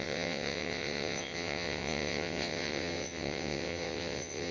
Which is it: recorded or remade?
remade